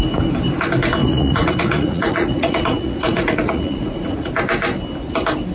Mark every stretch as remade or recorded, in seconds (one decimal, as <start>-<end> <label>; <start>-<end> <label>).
0.0-1.0 recorded; 1.0-4.3 remade; 4.3-5.5 recorded